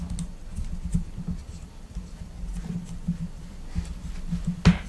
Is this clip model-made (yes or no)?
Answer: no